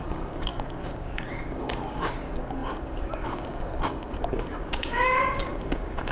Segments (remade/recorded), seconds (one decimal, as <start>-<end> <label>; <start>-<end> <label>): 0.0-6.1 remade